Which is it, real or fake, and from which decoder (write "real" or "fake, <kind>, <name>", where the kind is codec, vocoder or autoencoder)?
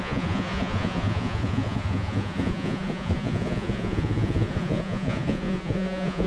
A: fake, vocoder, Vocos